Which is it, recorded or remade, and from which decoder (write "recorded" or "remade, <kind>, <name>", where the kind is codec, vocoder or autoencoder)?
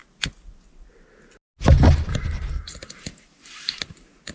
recorded